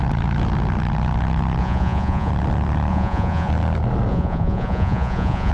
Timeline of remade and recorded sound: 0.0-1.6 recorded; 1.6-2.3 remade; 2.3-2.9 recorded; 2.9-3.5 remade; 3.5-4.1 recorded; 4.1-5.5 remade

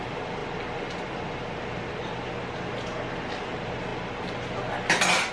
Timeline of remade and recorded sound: 0.0-5.3 recorded

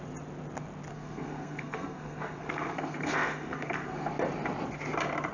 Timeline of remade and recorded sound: 0.0-0.9 recorded; 0.9-4.1 remade; 4.1-5.3 recorded